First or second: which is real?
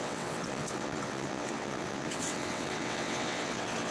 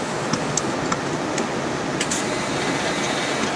second